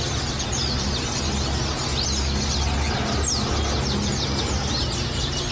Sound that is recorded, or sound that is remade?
recorded